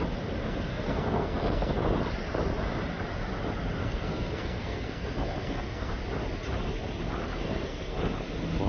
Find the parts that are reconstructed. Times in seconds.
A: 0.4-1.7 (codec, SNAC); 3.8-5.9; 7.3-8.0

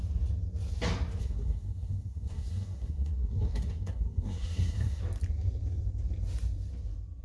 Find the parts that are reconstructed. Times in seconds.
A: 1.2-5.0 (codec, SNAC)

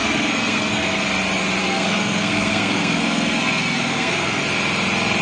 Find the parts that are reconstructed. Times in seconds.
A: 0.0-1.0 (codec, SNAC); 1.6-4.4

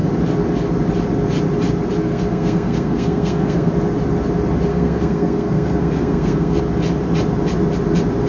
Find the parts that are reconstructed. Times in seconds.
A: 2.0-3.7 (codec, SNAC); 4.7-6.6

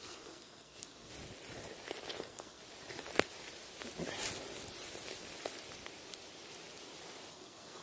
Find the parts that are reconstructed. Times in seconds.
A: 0.0-1.1 (codec, SNAC); 2.2-2.6; 7.3-7.8

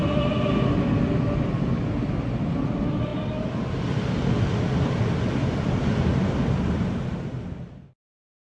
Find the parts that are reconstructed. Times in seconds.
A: none

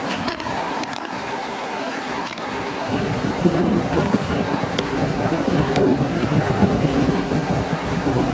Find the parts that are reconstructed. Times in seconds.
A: 0.0-8.3 (codec, SNAC)